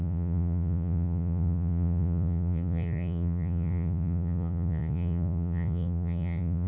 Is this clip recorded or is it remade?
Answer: remade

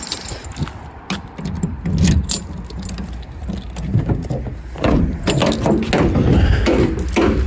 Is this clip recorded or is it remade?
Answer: recorded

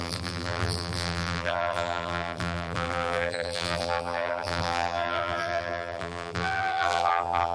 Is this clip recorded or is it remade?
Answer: remade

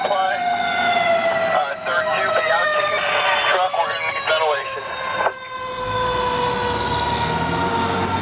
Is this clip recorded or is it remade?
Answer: recorded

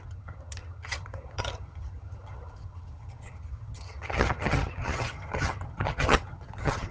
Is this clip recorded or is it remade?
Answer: remade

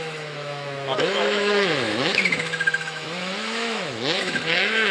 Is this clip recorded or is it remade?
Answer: remade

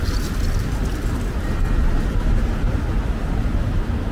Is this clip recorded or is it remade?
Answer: recorded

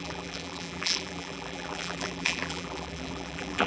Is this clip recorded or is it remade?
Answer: remade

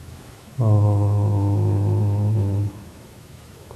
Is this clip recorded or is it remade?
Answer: remade